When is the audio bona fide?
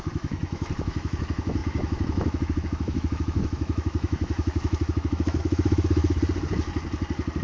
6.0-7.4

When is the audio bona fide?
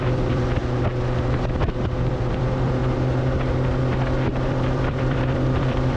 0.6-2.1; 2.8-4.5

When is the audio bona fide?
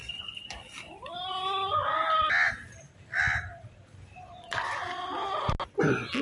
0.0-6.2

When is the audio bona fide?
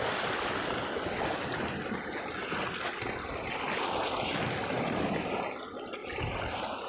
0.0-6.0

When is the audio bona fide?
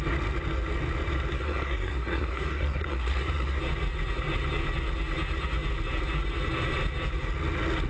0.0-1.3; 3.6-7.9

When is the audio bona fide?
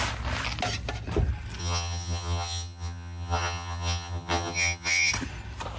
0.0-1.6; 5.1-5.8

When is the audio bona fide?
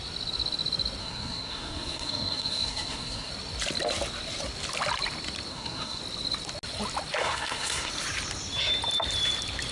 0.0-1.0; 3.3-5.5; 6.0-7.2; 7.9-9.7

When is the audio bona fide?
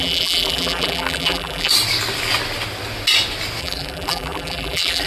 1.7-3.6